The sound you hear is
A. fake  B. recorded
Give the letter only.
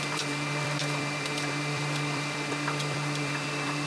A